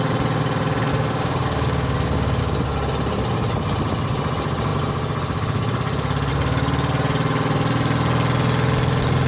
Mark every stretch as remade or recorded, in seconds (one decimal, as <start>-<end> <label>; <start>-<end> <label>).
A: 0.0-0.9 recorded; 0.9-2.4 remade; 2.4-9.3 recorded